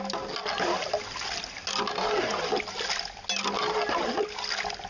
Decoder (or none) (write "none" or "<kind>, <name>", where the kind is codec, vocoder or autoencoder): none